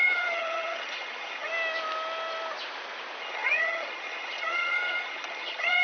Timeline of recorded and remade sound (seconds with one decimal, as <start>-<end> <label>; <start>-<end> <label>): 0.0-1.5 remade; 1.5-3.2 recorded; 3.2-5.8 remade